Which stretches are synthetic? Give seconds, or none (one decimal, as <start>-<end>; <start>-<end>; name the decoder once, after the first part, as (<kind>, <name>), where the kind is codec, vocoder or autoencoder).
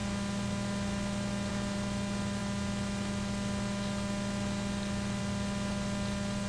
none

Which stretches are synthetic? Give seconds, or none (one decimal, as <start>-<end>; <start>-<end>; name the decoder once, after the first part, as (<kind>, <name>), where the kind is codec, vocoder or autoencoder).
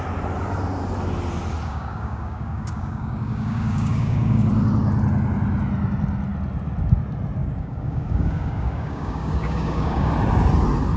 1.7-4.5 (codec, DAC); 7.4-10.1